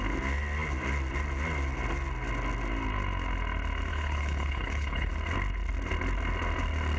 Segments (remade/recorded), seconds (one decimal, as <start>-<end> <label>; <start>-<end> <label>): 0.0-3.9 recorded; 3.9-5.1 remade; 5.1-7.0 recorded